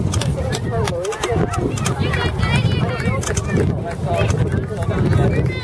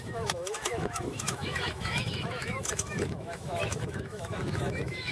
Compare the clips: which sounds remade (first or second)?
second